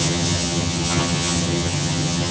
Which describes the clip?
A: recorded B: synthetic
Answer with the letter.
B